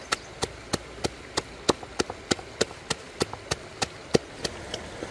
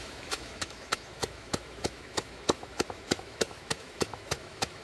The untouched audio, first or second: first